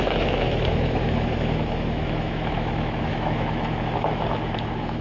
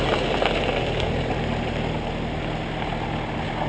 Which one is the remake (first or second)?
first